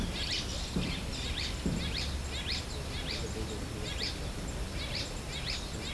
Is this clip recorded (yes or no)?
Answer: yes